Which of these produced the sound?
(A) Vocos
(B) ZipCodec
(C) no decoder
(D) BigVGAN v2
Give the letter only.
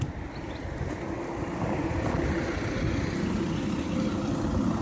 C